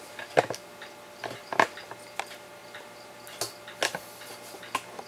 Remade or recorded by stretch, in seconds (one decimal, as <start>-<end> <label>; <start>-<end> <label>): 0.0-5.1 recorded